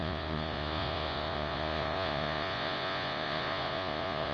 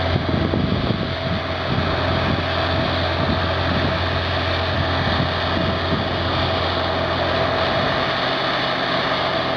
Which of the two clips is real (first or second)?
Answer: second